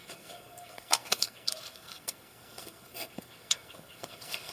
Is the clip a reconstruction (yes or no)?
yes